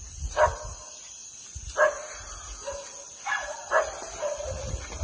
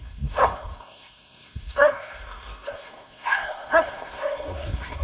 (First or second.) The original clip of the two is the first